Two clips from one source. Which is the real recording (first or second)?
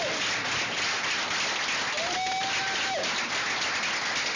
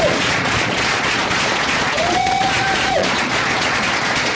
first